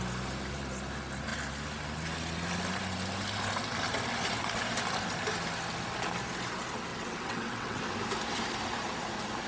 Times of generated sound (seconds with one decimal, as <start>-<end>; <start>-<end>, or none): 6.9-7.8